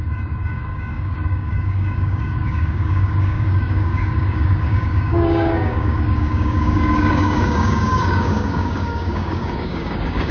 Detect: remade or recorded remade